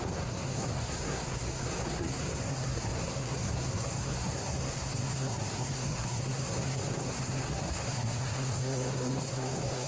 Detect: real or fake fake